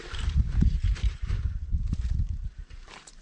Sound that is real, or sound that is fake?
fake